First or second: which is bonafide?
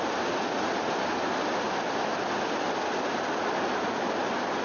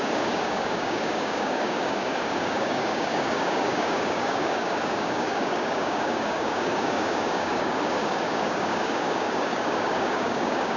first